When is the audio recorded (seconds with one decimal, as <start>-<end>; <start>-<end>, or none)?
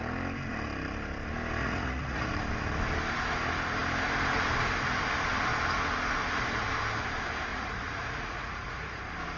0.0-1.6; 2.3-7.5; 9.0-9.4